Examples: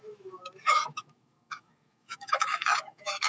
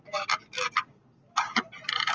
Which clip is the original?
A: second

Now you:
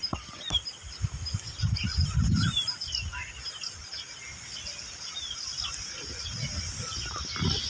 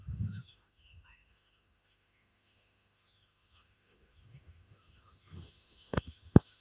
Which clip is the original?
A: first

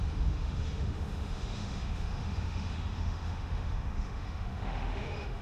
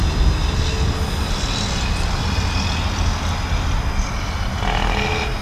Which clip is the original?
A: second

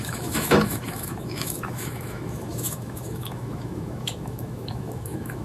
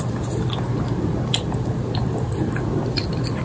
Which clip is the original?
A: second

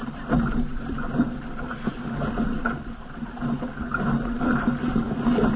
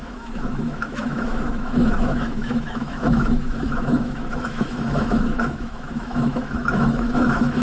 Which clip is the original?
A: first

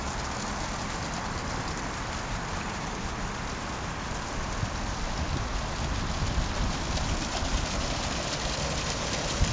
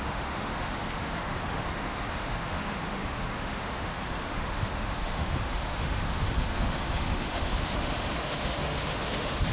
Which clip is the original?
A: first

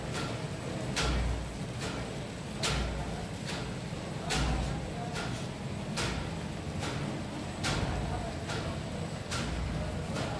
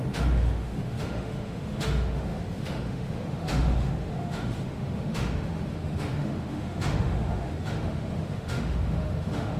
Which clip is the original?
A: first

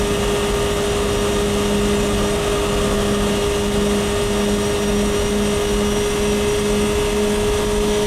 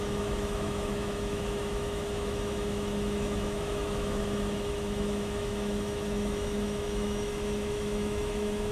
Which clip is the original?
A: first